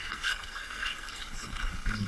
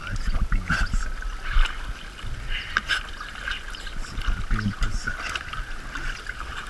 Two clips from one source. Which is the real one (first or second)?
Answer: second